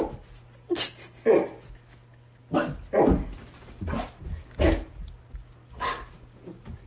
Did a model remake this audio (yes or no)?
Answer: no